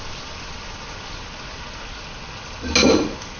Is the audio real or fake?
real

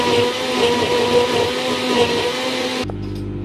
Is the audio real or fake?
real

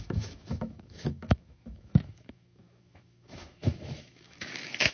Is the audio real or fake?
fake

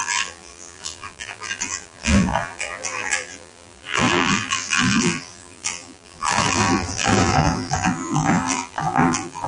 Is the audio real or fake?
fake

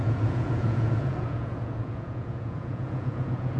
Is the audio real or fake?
fake